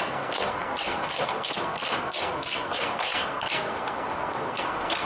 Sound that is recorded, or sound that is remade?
remade